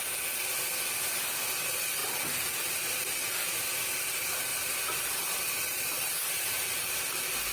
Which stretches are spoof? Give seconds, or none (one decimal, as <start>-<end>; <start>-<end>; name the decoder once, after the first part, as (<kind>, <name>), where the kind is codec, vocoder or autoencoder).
4.5-7.0 (vocoder, BigVGAN v2)